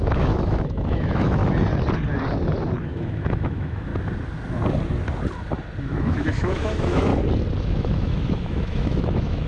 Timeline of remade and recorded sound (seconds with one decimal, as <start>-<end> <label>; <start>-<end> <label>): 0.0-1.4 remade; 1.4-2.8 recorded; 2.8-3.9 remade; 3.9-5.8 recorded; 5.8-7.1 remade; 7.1-7.6 recorded; 7.6-9.5 remade